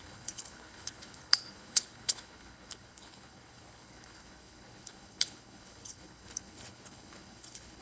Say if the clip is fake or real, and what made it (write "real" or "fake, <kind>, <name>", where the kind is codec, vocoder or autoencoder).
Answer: fake, codec, HILCodec